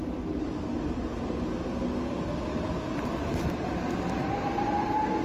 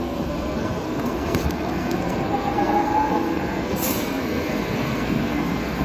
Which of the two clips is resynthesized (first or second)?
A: second